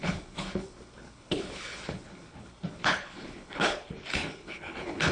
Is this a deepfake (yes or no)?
yes